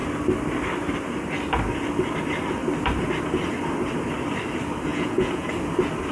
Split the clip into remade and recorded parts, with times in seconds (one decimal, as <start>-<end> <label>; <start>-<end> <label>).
0.0-4.9 recorded; 4.9-5.5 remade; 5.5-6.1 recorded